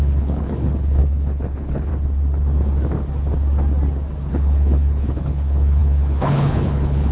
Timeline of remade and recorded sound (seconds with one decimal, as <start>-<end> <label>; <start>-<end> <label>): 0.0-1.9 remade; 1.9-4.3 recorded; 4.3-7.1 remade

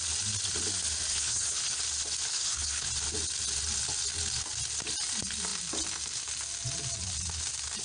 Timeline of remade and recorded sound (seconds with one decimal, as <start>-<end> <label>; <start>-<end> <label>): 0.0-1.1 recorded; 1.1-1.8 remade; 1.8-2.3 recorded; 2.3-2.9 remade; 2.9-7.8 recorded

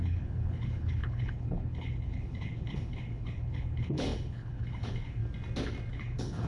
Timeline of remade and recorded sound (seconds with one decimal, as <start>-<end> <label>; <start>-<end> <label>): 0.0-5.2 remade; 5.2-5.9 recorded; 5.9-6.5 remade